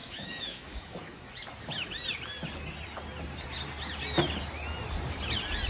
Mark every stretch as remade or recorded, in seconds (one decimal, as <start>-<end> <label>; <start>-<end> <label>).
0.0-1.3 remade; 1.3-5.7 recorded